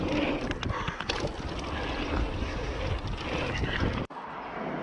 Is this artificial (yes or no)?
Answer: no